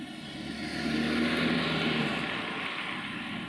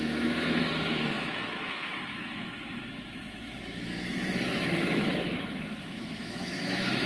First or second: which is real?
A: first